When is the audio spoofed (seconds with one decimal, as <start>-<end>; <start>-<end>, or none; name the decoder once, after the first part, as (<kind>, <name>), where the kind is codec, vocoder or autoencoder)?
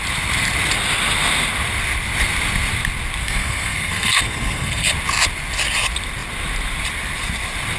3.2-4.9 (codec, SNAC)